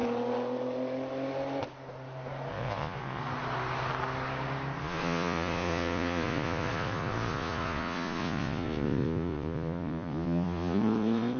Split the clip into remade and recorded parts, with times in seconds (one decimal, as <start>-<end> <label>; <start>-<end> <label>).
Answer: 0.0-2.5 recorded; 2.5-3.2 remade; 3.2-4.8 recorded; 4.8-11.4 remade